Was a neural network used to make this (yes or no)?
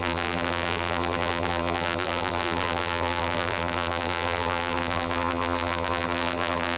yes